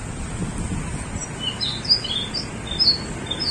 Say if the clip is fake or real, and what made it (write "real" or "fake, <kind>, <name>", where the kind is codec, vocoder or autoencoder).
real